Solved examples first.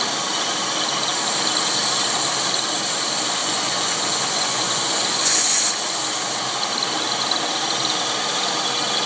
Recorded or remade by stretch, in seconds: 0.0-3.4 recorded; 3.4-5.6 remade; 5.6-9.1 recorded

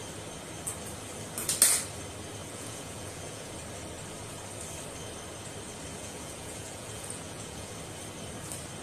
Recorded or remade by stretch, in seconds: 0.0-2.4 recorded; 2.4-3.5 remade; 3.5-5.9 recorded; 5.9-7.7 remade; 7.7-8.8 recorded